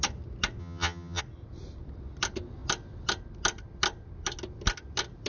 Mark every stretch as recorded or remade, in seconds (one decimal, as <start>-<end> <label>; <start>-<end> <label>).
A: 0.0-0.6 recorded; 0.6-1.2 remade; 1.2-5.3 recorded